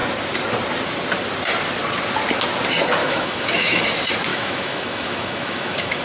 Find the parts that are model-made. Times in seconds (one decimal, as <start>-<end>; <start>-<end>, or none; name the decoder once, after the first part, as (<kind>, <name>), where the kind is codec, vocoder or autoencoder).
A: 3.0-3.8 (autoencoder, DAC-VAE); 4.3-6.0